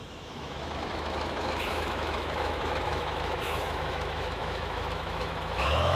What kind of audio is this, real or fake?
fake